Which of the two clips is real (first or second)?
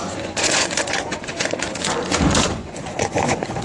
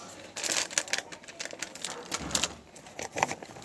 second